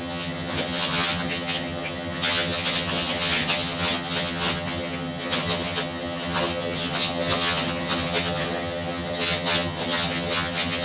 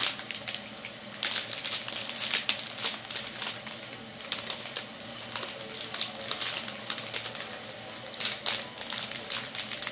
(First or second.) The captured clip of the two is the second